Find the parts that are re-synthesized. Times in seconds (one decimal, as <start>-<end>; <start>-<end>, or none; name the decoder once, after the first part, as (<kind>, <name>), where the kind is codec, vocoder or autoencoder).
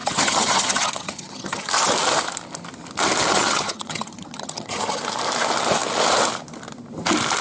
0.0-1.7 (vocoder, HiFi-GAN); 3.3-5.0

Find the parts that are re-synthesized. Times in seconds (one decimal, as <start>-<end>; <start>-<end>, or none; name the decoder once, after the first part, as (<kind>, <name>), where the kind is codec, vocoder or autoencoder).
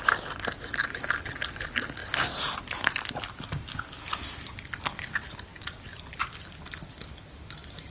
none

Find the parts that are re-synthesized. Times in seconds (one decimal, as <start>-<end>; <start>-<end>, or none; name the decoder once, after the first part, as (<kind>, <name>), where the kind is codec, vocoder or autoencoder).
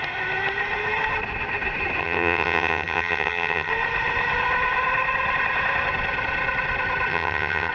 2.0-3.7 (vocoder, HiFi-GAN); 7.1-7.7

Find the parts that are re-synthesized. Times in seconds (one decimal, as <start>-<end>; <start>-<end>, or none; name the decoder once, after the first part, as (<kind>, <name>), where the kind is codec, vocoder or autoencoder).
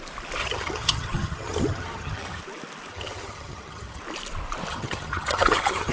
0.4-2.4 (vocoder, HiFi-GAN); 2.9-4.0; 4.7-5.9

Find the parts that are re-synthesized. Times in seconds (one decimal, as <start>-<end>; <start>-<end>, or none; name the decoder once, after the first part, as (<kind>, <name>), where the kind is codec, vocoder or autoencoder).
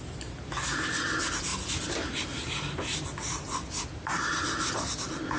none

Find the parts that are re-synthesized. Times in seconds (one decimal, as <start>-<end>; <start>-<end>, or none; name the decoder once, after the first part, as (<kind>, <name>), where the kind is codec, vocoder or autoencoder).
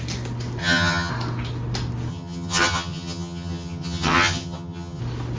0.6-1.1 (vocoder, HiFi-GAN); 2.1-5.0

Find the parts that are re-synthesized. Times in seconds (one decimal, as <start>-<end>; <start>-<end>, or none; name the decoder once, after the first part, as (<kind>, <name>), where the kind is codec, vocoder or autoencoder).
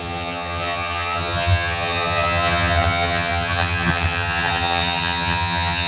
0.0-5.9 (vocoder, HiFi-GAN)